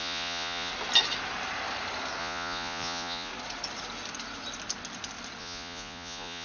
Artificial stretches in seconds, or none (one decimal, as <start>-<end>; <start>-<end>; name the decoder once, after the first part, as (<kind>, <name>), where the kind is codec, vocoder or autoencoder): 0.0-0.7 (vocoder, Vocos); 2.2-3.3; 5.4-6.4